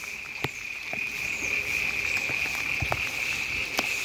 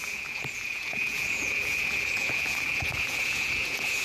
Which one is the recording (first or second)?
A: first